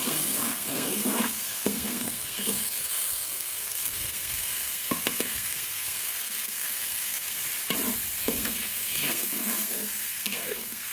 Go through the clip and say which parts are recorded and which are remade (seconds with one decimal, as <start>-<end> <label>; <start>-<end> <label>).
0.0-7.4 remade; 7.4-8.2 recorded; 8.2-10.9 remade